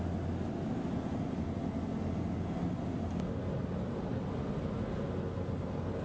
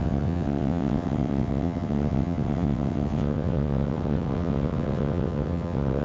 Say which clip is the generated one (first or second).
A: second